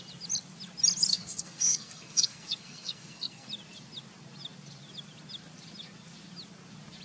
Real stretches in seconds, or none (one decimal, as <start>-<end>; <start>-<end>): 0.0-1.1; 3.5-7.0